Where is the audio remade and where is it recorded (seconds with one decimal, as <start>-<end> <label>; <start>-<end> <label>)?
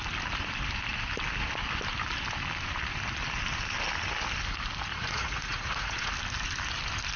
0.0-4.9 recorded; 4.9-6.1 remade; 6.1-7.2 recorded